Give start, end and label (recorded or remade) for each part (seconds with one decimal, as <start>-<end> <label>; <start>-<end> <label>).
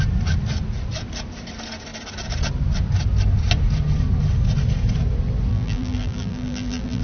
0.0-5.5 recorded; 5.5-7.0 remade